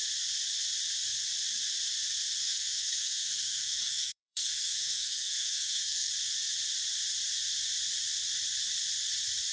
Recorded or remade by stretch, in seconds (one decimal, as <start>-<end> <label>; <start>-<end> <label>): 0.0-2.4 recorded; 2.4-6.1 remade; 6.1-9.5 recorded